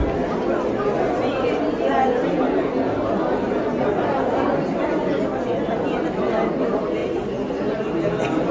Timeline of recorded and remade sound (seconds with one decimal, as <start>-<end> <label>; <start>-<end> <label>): 0.0-8.5 recorded